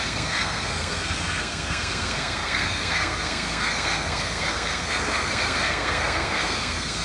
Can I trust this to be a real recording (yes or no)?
no